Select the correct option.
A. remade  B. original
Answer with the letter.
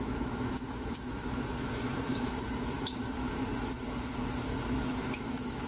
A